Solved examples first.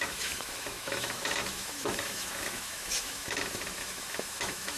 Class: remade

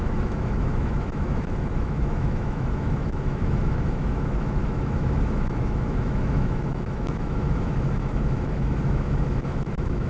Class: remade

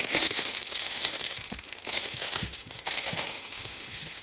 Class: remade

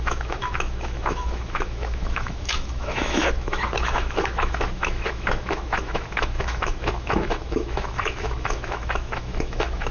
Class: remade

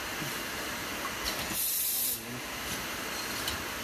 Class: recorded